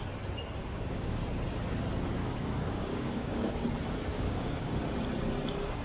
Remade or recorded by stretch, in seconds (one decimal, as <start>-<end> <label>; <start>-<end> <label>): 0.0-0.6 recorded; 0.6-1.2 remade; 1.2-2.2 recorded; 2.2-3.6 remade; 3.6-4.1 recorded; 4.1-4.7 remade; 4.7-5.8 recorded